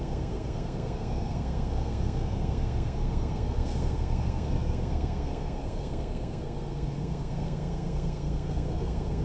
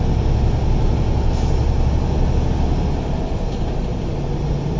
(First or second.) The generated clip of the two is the first